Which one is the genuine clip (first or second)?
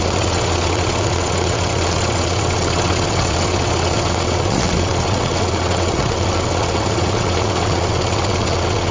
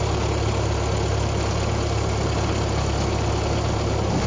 second